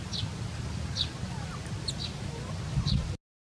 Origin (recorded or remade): recorded